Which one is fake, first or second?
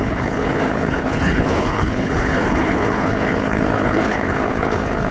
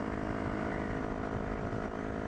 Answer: first